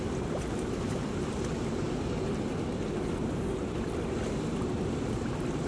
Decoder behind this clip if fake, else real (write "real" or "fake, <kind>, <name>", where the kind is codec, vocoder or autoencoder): real